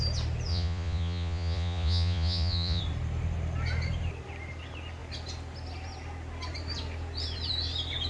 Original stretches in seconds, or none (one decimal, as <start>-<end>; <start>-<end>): 0.0-0.5; 2.8-8.1